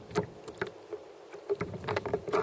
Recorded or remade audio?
remade